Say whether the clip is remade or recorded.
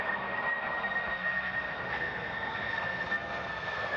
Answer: remade